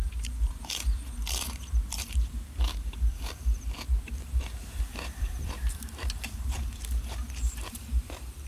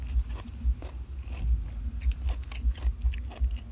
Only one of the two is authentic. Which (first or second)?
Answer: second